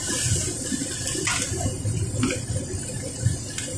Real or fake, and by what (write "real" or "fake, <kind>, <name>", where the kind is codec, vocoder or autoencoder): real